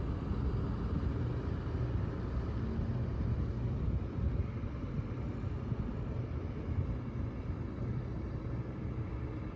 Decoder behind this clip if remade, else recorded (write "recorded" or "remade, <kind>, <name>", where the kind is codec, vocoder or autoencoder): recorded